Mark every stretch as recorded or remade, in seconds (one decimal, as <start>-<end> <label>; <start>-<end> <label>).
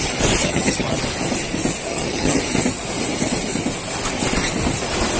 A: 0.0-0.4 recorded; 0.4-1.0 remade; 1.0-1.9 recorded; 1.9-2.4 remade; 2.4-5.2 recorded